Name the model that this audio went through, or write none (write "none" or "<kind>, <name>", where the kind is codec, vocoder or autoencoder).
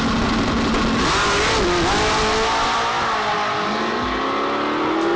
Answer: none